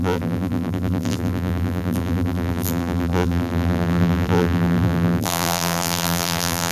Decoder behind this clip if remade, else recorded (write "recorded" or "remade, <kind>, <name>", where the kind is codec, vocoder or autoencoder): remade, vocoder, BigVGAN v2